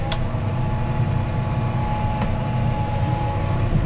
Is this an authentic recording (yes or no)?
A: yes